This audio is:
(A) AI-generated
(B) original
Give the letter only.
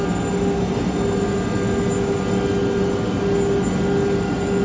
B